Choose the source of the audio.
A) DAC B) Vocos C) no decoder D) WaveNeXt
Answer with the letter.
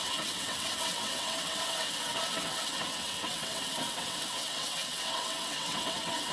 D